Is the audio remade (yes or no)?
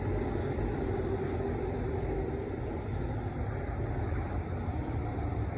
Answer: yes